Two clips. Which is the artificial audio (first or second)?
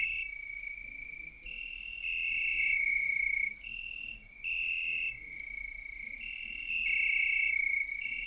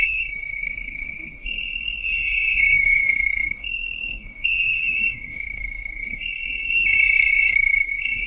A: second